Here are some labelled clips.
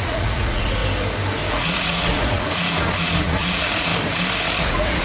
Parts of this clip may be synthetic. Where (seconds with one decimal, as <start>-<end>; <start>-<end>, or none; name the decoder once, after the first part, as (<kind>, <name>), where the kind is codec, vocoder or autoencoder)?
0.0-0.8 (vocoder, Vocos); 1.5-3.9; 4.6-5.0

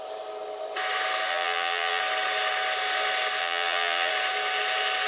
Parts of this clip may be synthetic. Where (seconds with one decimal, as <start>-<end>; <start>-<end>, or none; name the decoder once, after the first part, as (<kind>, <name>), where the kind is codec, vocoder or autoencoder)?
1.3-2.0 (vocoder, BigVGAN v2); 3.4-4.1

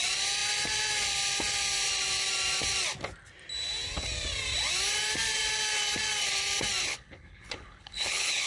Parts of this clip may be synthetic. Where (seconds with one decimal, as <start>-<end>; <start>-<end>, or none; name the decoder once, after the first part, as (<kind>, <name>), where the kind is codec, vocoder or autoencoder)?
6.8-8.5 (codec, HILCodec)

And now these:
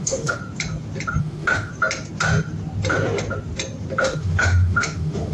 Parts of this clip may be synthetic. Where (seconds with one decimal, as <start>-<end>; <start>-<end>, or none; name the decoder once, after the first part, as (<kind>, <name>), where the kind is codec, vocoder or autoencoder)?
0.0-0.4 (autoencoder, DAC-VAE); 1.2-1.7; 4.0-5.3

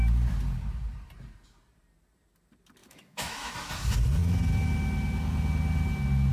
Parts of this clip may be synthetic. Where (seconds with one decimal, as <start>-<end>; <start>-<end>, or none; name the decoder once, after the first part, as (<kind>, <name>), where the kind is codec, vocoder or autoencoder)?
2.8-3.5 (autoencoder, DAC-VAE)